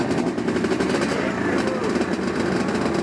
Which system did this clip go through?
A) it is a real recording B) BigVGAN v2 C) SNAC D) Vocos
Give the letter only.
B